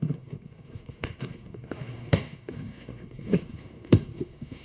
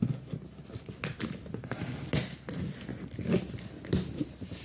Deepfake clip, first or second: first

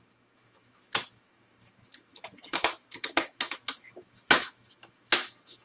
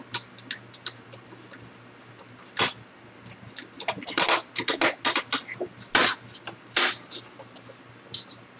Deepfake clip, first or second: first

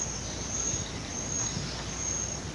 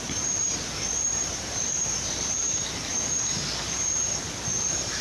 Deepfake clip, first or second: second